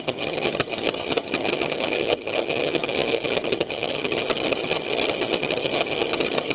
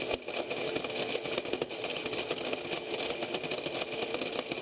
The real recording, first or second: second